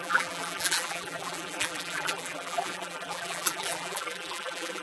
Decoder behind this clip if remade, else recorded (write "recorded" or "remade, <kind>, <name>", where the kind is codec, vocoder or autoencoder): remade, vocoder, BigVGAN v2